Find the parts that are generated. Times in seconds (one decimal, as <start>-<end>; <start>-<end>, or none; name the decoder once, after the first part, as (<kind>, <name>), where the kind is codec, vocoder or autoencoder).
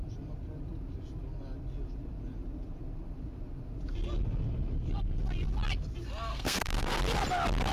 6.3-7.0 (codec, SNAC)